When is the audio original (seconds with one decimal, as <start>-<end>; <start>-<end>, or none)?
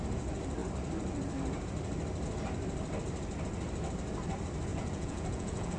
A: 0.0-4.7